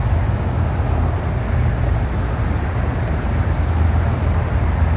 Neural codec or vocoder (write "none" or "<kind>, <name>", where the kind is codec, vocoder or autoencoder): none